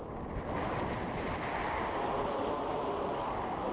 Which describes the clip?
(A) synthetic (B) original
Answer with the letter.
B